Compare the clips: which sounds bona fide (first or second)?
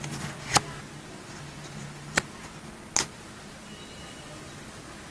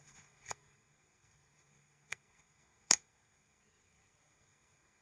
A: first